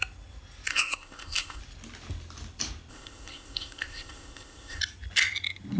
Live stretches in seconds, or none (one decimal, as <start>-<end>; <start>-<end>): 0.0-0.7; 1.6-2.9; 4.8-5.8